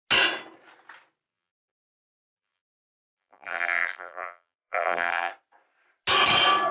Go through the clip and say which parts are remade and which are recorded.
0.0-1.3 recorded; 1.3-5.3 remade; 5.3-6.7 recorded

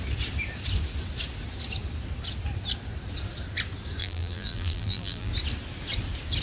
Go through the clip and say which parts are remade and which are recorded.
0.0-4.0 recorded; 4.0-5.3 remade; 5.3-6.4 recorded

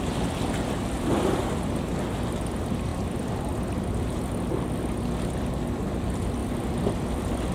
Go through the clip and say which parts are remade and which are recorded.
0.0-2.9 recorded; 2.9-4.3 remade; 4.3-6.4 recorded; 6.4-7.5 remade

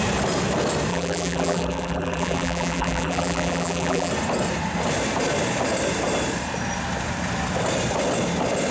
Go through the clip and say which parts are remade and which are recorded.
0.0-0.9 recorded; 0.9-4.1 remade; 4.1-8.7 recorded

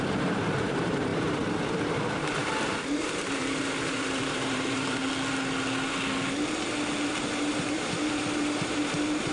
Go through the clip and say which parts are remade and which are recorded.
0.0-5.0 remade; 5.0-7.1 recorded; 7.1-9.3 remade

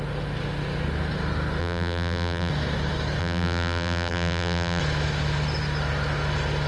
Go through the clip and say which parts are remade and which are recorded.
0.0-1.6 recorded; 1.6-2.5 remade; 2.5-3.2 recorded; 3.2-4.8 remade; 4.8-6.7 recorded